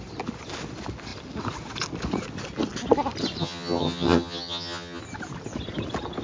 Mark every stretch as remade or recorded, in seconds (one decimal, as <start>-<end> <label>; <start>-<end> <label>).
0.0-3.4 recorded; 3.4-5.0 remade; 5.0-6.2 recorded